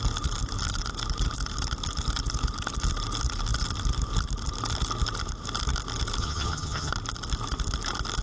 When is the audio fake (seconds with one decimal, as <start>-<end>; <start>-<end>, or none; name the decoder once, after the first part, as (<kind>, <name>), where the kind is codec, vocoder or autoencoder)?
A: 6.2-6.9 (vocoder, HiFi-GAN)